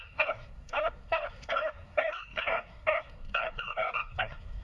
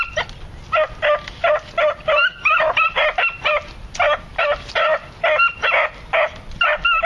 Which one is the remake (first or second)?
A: first